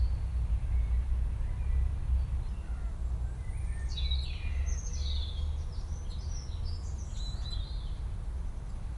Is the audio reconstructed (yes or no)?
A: no